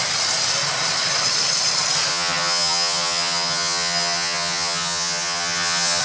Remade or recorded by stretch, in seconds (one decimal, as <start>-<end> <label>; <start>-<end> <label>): 0.0-2.1 recorded; 2.1-6.0 remade